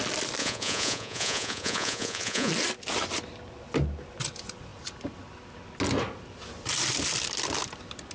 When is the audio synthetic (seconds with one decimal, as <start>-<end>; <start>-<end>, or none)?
0.4-2.5